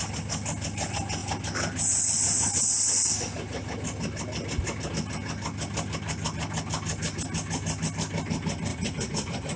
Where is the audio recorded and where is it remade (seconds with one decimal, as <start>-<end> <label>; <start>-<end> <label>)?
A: 0.0-8.7 recorded; 8.7-9.6 remade

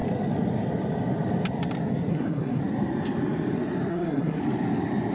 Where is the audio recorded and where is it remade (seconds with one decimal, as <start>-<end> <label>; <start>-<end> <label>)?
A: 0.0-2.1 recorded; 2.1-2.6 remade; 2.6-3.9 recorded; 3.9-4.4 remade; 4.4-5.1 recorded